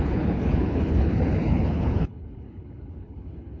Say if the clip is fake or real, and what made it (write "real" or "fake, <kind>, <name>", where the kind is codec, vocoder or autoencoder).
fake, codec, HILCodec